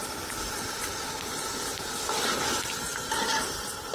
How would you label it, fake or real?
real